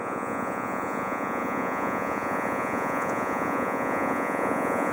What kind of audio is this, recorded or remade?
remade